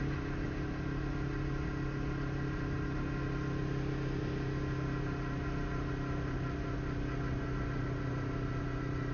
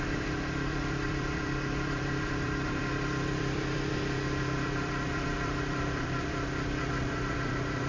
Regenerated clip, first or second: second